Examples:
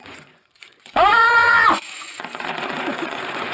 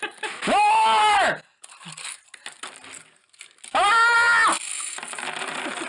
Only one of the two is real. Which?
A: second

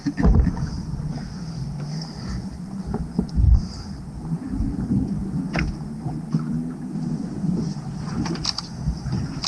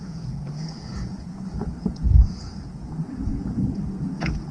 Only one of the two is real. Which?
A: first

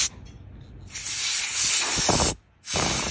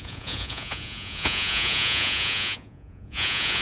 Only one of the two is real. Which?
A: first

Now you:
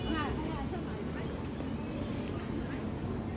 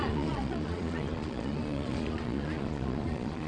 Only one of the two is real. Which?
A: first